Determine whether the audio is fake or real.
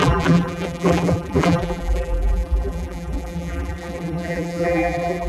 fake